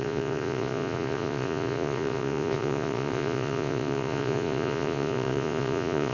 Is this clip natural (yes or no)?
no